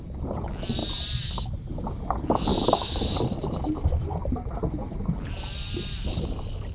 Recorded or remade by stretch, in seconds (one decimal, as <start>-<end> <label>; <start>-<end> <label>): 0.0-2.5 recorded; 2.5-3.0 remade; 3.0-6.7 recorded

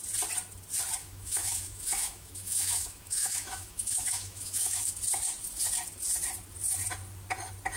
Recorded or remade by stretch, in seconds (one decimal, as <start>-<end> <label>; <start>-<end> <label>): 0.0-1.0 recorded; 1.0-4.9 remade; 4.9-7.8 recorded

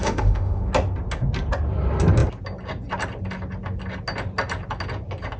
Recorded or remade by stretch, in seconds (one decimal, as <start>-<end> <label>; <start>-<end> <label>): 0.0-0.7 remade; 0.7-5.4 recorded

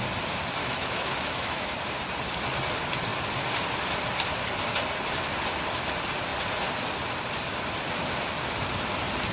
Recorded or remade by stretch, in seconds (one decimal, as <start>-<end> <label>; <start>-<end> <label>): 0.0-0.6 recorded; 0.6-1.7 remade; 1.7-9.3 recorded